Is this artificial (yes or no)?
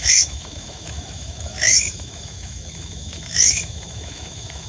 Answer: yes